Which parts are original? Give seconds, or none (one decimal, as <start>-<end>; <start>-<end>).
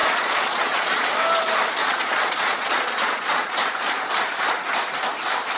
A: 1.0-1.8; 3.5-5.6